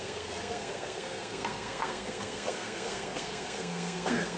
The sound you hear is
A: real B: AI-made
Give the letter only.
B